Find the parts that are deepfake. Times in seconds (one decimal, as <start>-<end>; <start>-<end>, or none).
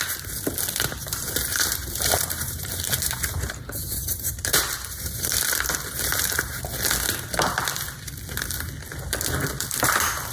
1.5-6.6